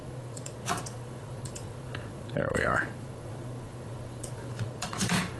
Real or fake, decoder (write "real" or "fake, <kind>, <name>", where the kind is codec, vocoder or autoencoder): fake, vocoder, Vocos